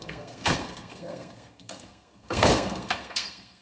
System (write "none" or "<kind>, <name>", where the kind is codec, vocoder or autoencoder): codec, SNAC